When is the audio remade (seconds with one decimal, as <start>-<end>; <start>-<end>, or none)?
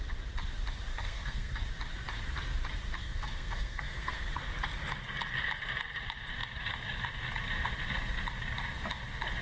0.9-1.6; 3.0-4.4